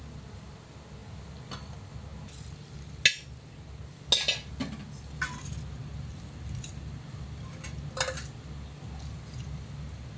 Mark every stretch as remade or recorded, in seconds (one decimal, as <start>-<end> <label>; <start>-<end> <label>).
0.0-10.2 recorded